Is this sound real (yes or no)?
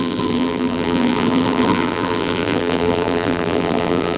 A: no